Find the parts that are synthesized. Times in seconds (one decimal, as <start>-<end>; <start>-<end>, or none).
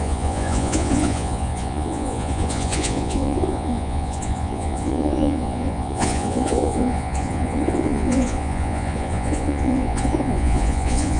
0.0-11.2